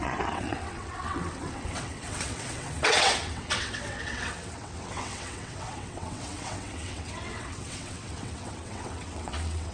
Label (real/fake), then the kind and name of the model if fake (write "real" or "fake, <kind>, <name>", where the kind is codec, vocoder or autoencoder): fake, vocoder, WaveNeXt